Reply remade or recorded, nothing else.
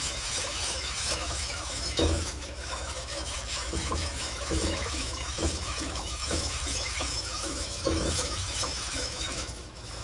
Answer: remade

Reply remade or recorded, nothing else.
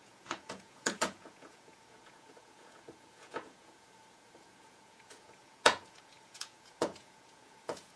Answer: remade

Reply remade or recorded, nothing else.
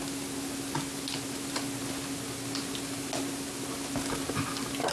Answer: recorded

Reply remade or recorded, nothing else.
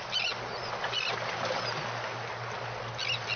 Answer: recorded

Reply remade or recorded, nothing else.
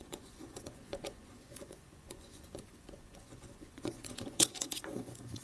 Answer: remade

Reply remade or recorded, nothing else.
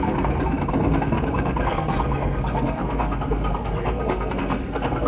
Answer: remade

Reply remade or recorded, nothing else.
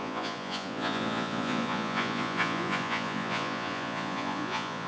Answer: remade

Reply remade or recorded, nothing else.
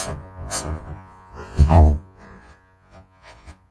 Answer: remade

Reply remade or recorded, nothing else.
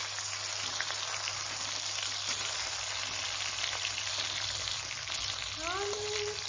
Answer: recorded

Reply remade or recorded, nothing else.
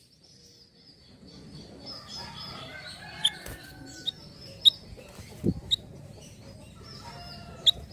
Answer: recorded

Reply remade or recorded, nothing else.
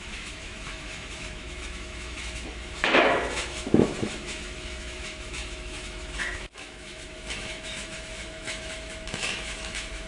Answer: remade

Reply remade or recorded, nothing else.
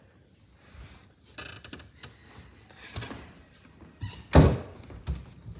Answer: recorded